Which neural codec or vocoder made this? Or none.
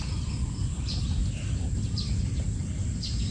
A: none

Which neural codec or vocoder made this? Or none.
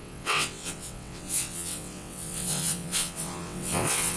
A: vocoder, WaveNeXt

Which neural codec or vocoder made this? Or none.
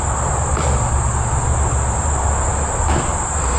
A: none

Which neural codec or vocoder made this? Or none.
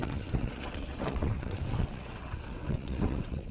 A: vocoder, WaveNeXt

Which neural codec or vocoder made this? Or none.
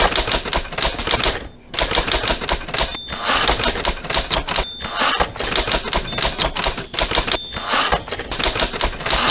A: none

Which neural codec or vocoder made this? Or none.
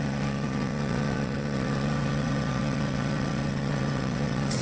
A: vocoder, WaveNeXt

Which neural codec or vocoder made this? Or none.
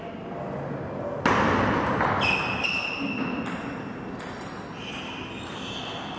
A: none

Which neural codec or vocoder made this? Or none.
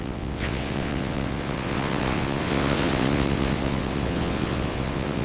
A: vocoder, WaveNeXt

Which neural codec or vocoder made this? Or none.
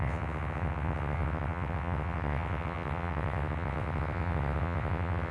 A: vocoder, WaveNeXt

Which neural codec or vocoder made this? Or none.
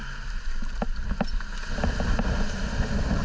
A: none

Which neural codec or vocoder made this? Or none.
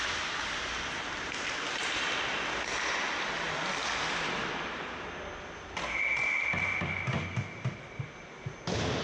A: none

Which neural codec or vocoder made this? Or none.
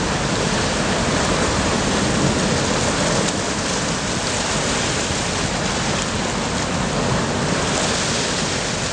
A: none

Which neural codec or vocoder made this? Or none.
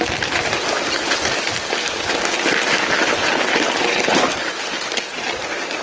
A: none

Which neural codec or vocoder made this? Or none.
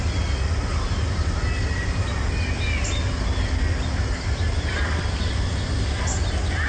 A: none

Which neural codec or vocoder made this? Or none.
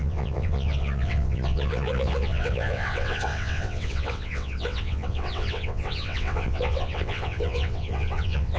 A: vocoder, WaveNeXt